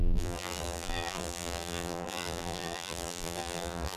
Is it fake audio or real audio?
fake